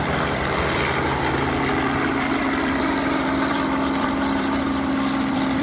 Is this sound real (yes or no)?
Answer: no